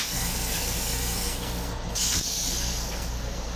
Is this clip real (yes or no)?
no